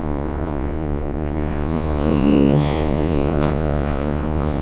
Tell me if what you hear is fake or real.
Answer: fake